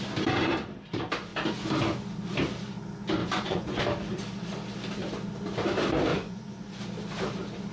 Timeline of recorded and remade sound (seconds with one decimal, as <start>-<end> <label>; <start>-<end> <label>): 0.0-3.2 recorded; 3.2-3.8 remade; 3.8-6.1 recorded; 6.1-6.8 remade; 6.8-7.7 recorded